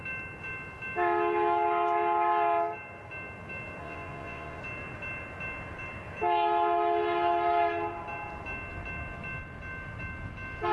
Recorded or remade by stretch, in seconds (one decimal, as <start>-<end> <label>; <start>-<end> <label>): 0.0-3.8 recorded; 3.8-4.6 remade; 4.6-10.7 recorded